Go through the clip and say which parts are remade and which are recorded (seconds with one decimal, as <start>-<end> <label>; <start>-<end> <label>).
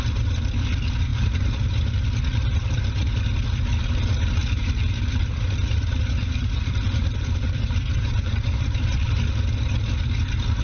0.0-1.1 recorded; 1.1-1.9 remade; 1.9-2.3 recorded; 2.3-3.3 remade; 3.3-4.4 recorded; 4.4-9.2 remade; 9.2-10.6 recorded